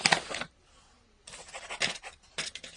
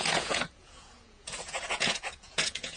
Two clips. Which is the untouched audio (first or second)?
first